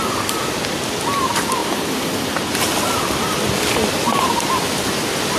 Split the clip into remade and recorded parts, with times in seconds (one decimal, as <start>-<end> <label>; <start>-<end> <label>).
0.0-5.4 recorded